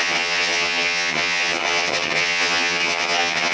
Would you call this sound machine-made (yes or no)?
yes